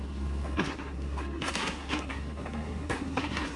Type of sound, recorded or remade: remade